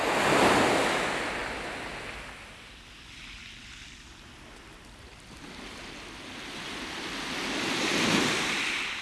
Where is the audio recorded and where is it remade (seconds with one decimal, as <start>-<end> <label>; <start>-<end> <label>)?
0.0-9.0 recorded